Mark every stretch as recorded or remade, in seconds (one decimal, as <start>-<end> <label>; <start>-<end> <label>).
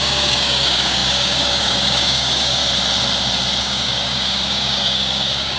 0.0-2.6 remade; 2.6-3.6 recorded; 3.6-5.6 remade